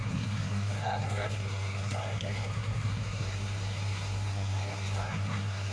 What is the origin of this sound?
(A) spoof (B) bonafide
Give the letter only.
A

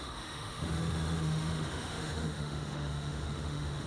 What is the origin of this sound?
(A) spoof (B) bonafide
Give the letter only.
A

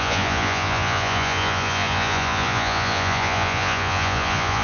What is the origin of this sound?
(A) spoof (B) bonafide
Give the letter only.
A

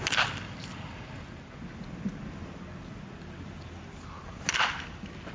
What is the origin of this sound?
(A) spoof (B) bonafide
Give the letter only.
B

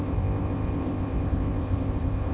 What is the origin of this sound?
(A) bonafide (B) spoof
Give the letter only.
B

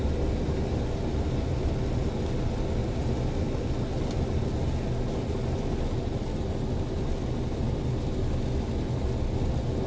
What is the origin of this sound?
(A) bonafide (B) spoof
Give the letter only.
A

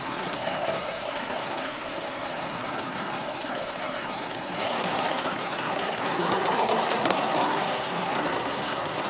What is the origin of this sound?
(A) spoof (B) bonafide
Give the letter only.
A